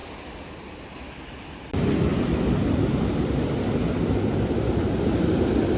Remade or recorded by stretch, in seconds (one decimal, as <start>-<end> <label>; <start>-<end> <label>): 0.0-5.8 recorded